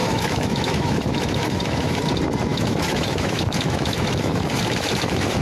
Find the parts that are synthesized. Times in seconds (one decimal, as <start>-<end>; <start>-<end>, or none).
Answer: 0.0-2.0; 2.5-5.4